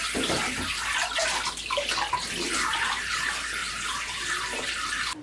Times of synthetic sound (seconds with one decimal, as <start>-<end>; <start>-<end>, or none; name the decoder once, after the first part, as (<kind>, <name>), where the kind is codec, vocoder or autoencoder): none